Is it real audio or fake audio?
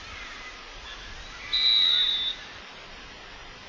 real